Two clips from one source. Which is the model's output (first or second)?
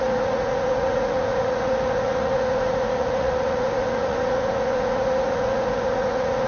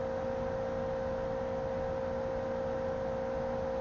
first